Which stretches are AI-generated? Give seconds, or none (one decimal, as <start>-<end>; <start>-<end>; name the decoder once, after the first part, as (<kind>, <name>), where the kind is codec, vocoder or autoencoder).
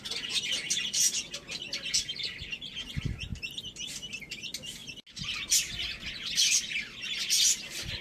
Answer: 3.3-4.1 (vocoder, BigVGAN v2)